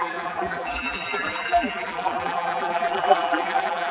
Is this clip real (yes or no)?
no